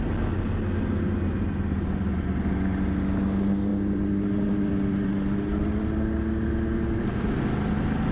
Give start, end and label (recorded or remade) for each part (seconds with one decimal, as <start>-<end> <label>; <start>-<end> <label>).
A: 0.0-8.1 recorded